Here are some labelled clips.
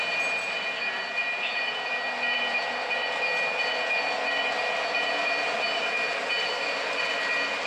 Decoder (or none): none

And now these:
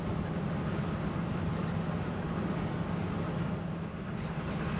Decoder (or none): none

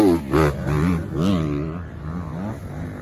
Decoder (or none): none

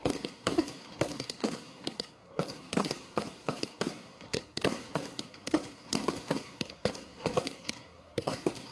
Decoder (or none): codec, SNAC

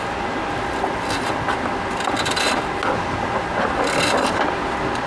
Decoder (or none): none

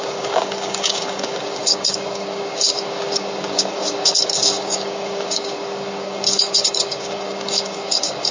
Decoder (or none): codec, DAC